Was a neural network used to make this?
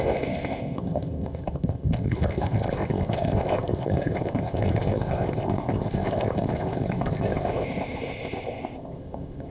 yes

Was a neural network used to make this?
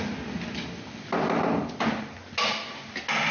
no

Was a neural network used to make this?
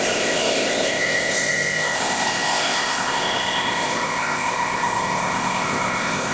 yes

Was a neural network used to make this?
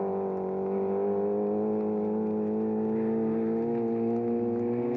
no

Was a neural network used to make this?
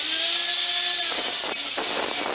no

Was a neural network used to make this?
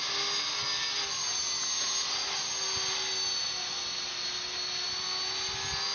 no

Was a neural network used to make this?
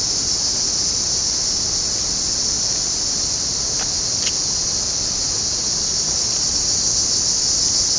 no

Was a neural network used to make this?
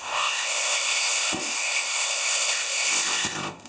yes